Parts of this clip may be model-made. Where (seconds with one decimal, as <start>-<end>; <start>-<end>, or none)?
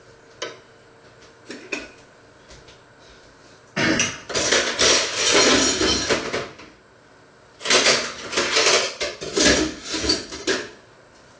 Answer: none